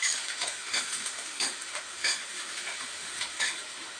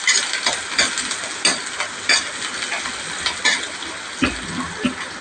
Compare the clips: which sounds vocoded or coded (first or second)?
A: first